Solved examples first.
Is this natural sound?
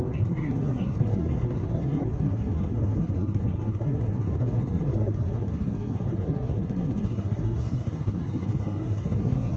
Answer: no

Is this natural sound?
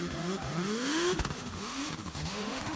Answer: no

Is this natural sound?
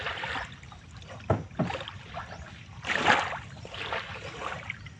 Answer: yes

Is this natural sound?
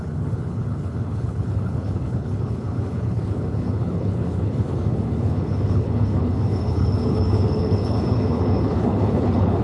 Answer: no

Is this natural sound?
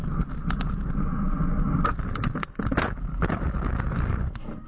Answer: yes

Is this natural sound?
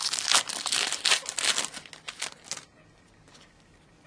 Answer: yes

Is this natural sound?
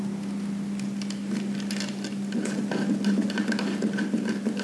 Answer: yes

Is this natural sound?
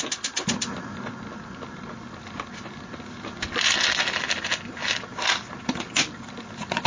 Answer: yes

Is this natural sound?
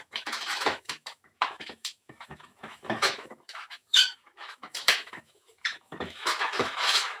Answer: no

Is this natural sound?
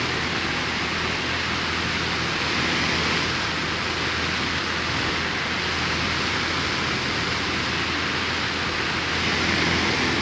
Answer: yes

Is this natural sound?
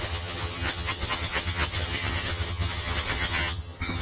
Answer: no